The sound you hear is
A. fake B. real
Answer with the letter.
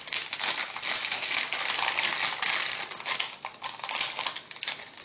B